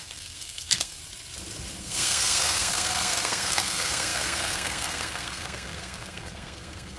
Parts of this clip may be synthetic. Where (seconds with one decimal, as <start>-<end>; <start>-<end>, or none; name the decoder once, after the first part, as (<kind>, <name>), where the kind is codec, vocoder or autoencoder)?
0.0-1.0 (codec, SNAC); 1.8-7.0